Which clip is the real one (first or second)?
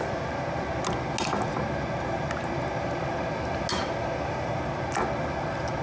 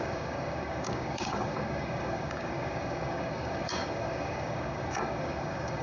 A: first